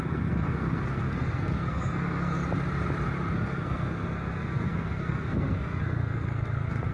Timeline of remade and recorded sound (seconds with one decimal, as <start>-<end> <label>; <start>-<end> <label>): 0.0-2.4 remade; 2.4-3.3 recorded; 3.3-6.9 remade

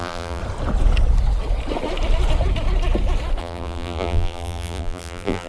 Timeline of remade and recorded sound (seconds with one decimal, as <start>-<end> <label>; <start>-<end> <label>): 0.0-0.4 remade; 0.4-3.4 recorded; 3.4-5.5 remade

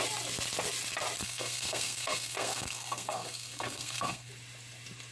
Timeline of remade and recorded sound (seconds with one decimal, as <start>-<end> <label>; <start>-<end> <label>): 0.0-1.2 recorded; 1.2-4.3 remade; 4.3-5.1 recorded

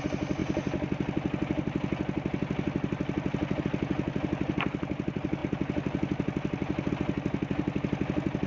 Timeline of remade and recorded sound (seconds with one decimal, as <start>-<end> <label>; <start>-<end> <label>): 0.0-8.5 recorded

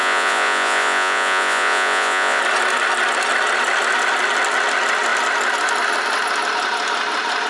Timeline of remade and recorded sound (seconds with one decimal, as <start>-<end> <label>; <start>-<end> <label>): 0.0-2.4 remade; 2.4-7.5 recorded